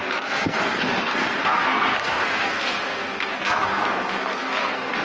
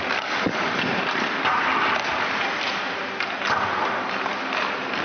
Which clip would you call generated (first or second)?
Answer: first